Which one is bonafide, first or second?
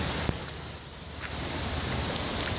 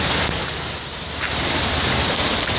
second